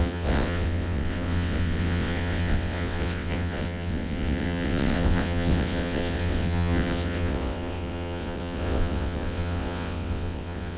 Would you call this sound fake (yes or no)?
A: yes